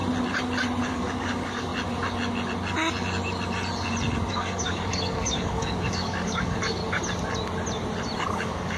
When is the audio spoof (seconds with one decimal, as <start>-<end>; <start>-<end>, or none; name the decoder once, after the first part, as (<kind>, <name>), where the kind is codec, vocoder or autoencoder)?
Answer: 0.9-1.7 (codec, DAC); 4.3-6.8; 8.3-8.8